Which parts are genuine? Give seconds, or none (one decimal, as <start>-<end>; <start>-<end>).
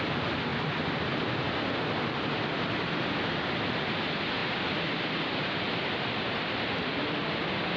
0.0-7.8